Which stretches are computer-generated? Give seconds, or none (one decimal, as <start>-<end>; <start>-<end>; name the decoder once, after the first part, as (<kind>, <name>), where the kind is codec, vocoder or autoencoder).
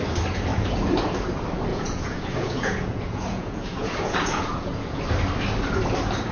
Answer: 0.5-1.0 (vocoder, Vocos); 1.7-5.0